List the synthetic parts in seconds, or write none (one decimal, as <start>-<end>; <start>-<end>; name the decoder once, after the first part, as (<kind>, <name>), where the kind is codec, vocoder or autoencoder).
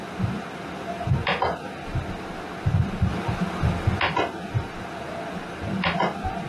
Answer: 1.2-1.7 (vocoder, BigVGAN v2)